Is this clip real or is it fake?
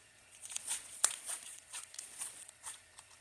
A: fake